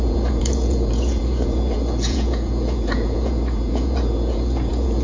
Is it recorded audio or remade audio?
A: remade